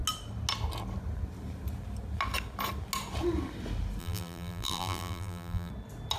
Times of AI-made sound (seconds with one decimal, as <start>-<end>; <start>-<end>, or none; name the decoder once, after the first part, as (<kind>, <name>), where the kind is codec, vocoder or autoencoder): 4.0-5.7 (vocoder, BigVGAN v2)